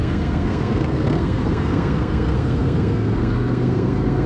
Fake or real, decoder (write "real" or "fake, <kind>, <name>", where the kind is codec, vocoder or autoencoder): fake, codec, SNAC